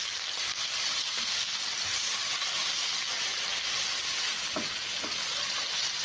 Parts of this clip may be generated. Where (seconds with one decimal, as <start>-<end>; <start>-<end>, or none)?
1.0-1.6